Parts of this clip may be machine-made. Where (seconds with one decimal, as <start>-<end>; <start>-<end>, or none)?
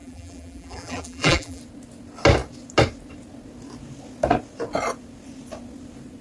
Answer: 0.0-1.6